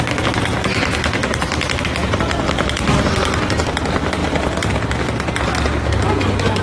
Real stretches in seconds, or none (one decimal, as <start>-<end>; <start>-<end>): 0.0-6.6